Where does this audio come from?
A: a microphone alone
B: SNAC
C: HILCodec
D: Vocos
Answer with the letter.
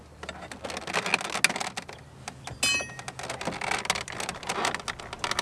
A